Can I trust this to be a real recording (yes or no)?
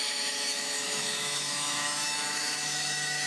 no